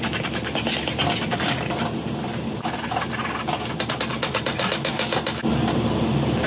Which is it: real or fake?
real